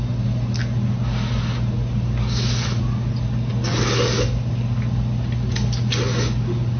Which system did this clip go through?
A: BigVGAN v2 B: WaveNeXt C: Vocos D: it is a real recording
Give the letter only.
D